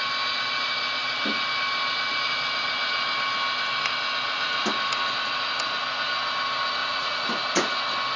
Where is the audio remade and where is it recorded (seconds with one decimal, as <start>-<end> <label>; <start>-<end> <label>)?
0.0-6.8 recorded; 6.8-7.7 remade; 7.7-8.2 recorded